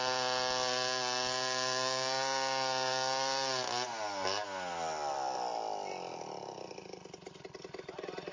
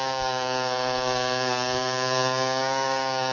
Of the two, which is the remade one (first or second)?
second